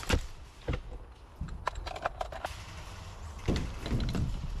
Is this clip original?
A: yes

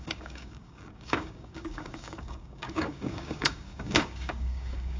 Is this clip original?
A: no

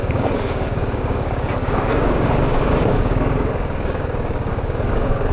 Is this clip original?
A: no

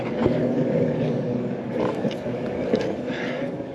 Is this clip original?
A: no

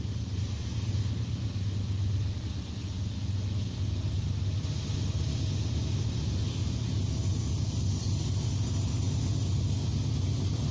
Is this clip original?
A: yes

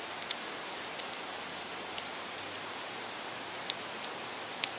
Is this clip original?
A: yes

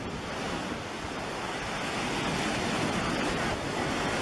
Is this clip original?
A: yes